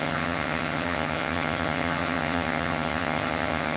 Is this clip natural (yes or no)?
no